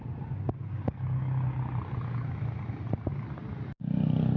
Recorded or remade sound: recorded